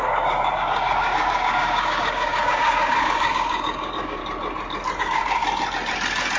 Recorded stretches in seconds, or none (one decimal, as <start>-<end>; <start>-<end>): 4.2-5.0; 5.4-6.4

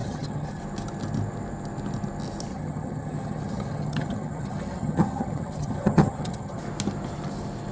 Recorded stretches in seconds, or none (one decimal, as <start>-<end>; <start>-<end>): 0.6-2.5; 6.6-7.7

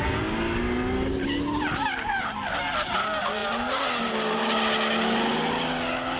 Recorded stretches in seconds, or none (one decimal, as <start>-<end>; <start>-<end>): 0.0-6.2

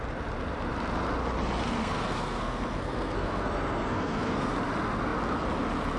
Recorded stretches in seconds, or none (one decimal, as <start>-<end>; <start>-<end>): 0.0-1.8; 4.5-6.0